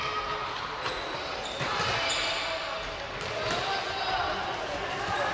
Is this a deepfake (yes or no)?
no